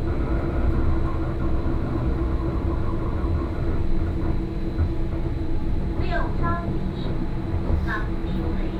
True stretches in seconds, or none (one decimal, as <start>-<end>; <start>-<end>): 0.0-8.2